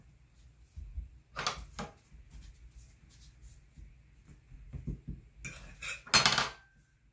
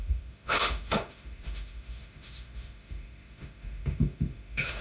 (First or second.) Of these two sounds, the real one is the first